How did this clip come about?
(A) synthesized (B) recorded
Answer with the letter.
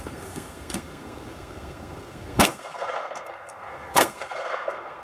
A